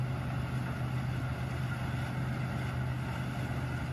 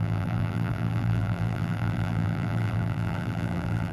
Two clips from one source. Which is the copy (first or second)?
second